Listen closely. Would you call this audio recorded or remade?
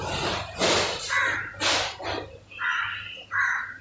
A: recorded